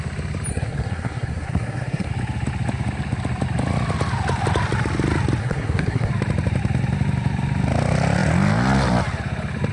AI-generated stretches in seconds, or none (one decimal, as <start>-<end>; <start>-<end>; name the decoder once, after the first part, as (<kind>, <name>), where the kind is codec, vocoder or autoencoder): 0.5-2.1 (codec, SNAC); 5.4-6.1